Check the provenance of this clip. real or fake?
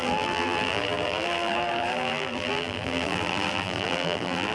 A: fake